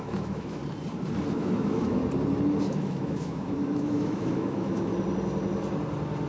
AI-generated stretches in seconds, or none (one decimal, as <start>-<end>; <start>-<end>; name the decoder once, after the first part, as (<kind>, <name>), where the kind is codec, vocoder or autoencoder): 0.0-0.6 (autoencoder, DAC-VAE); 1.3-2.0; 2.6-4.9